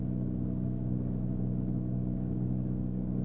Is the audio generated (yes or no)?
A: yes